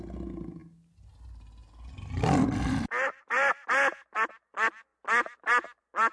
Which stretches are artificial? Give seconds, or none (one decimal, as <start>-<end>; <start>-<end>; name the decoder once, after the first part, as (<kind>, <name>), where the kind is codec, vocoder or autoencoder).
none